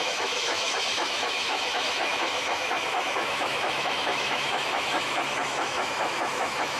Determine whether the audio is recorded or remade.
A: remade